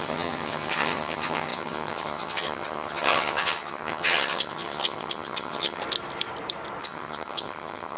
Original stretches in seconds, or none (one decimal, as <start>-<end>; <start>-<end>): 5.8-6.8